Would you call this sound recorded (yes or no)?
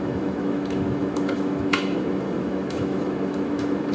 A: no